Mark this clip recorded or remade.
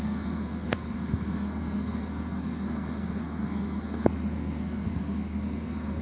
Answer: remade